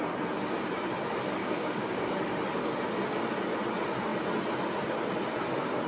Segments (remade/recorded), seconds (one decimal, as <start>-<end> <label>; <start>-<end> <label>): 0.0-1.4 recorded; 1.4-2.1 remade; 2.1-5.9 recorded